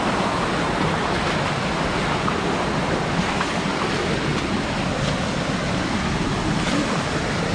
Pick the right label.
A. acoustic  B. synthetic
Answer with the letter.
A